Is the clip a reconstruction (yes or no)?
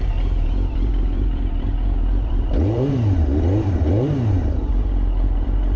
yes